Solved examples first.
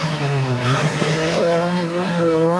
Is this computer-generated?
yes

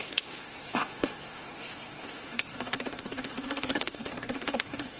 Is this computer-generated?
yes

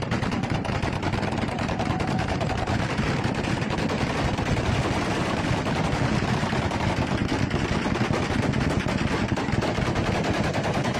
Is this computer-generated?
no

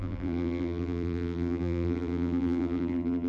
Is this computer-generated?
yes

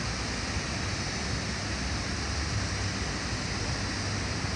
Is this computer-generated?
no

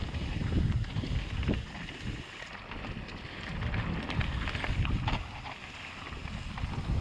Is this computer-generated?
no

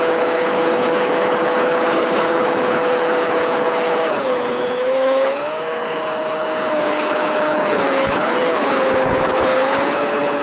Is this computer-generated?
yes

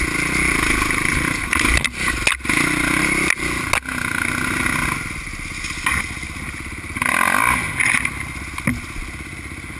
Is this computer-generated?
no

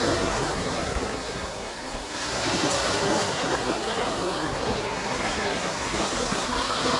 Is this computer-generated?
yes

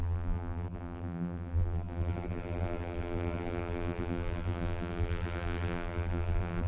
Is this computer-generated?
yes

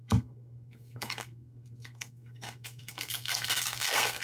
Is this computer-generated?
yes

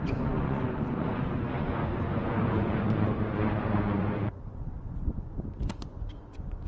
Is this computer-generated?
yes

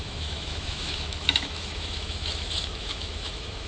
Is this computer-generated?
yes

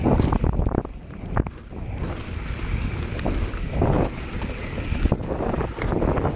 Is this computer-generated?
no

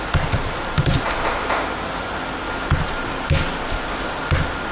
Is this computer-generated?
no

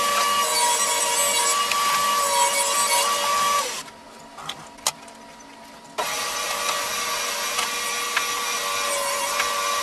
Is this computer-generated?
no